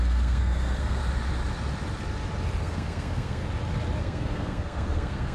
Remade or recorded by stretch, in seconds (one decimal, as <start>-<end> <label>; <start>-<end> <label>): 0.0-1.0 remade; 1.0-2.6 recorded; 2.6-3.4 remade; 3.4-4.0 recorded; 4.0-5.3 remade